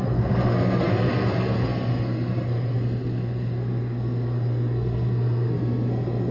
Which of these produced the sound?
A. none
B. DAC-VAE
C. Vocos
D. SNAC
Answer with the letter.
D